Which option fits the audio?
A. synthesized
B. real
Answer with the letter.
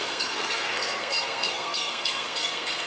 A